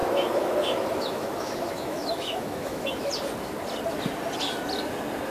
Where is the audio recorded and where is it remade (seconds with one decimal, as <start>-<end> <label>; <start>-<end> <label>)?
0.0-3.1 remade; 3.1-5.3 recorded